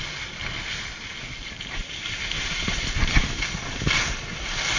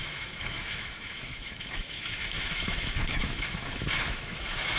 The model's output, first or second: second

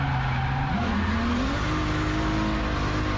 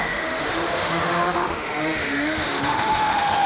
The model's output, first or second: second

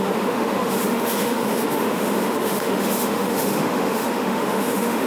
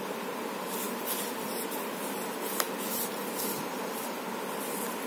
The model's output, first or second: first